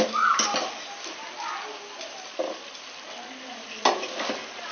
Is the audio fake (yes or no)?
no